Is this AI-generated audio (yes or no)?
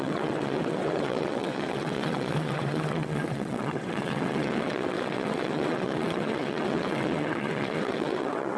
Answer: yes